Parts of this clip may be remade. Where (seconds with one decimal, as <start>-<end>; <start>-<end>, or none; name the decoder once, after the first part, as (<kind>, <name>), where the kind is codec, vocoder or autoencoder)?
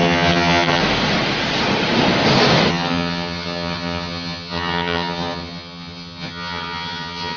0.0-0.8 (vocoder, HiFi-GAN); 2.7-7.4